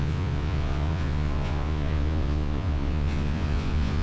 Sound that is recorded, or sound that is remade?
remade